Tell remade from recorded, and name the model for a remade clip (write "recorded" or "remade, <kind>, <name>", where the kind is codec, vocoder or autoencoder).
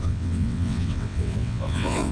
remade, vocoder, WaveNeXt